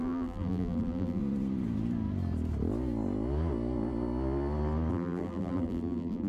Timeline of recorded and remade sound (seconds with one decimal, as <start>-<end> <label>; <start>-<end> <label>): 0.0-1.2 remade; 1.2-4.9 recorded; 4.9-6.3 remade